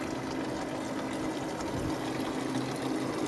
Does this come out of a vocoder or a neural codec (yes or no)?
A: no